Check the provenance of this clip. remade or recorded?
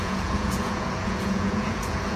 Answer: remade